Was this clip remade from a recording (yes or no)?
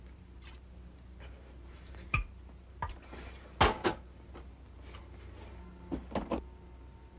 no